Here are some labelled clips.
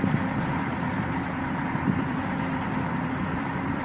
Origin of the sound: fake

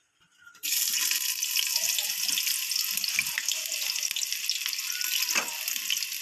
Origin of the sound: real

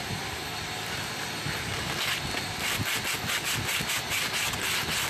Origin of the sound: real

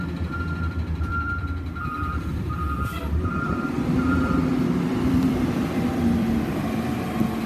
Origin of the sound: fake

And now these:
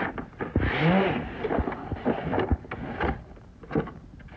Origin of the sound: real